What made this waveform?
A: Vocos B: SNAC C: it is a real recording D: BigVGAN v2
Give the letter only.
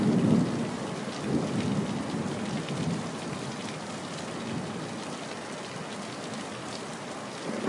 C